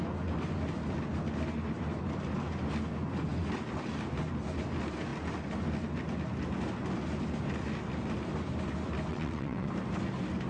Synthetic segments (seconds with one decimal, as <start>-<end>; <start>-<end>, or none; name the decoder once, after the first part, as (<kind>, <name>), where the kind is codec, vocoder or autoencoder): 9.1-9.7 (vocoder, WaveNeXt)